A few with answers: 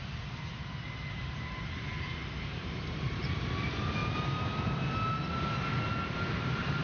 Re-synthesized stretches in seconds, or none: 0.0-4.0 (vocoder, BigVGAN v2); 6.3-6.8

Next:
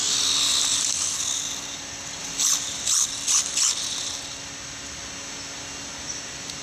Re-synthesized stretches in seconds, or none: 2.2-2.9 (vocoder, BigVGAN v2)

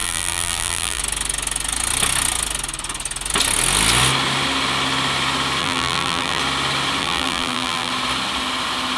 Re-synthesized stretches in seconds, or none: 0.0-1.0 (vocoder, BigVGAN v2); 5.6-6.4; 7.0-7.9

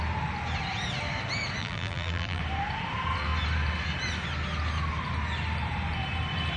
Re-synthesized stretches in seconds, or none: 1.6-2.4 (vocoder, BigVGAN v2)

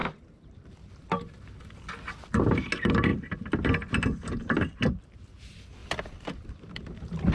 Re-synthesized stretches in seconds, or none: 0.0-1.9 (vocoder, BigVGAN v2); 5.8-7.3